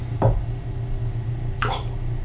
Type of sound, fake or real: real